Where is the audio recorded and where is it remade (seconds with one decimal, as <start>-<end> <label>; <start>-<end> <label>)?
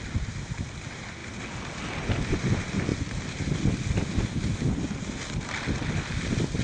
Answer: 0.0-6.6 recorded